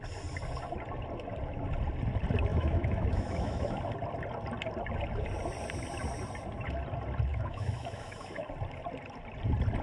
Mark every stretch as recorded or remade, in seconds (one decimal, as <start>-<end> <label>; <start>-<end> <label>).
0.0-2.5 recorded; 2.5-3.8 remade; 3.8-7.3 recorded; 7.3-8.5 remade; 8.5-9.8 recorded